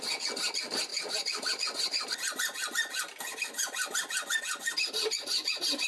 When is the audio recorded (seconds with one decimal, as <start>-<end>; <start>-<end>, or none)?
0.0-5.9